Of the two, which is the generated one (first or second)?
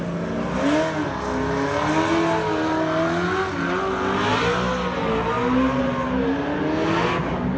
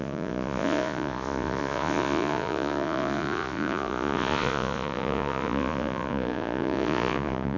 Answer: second